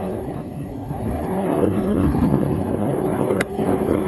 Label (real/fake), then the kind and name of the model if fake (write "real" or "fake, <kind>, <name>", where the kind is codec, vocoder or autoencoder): fake, codec, SNAC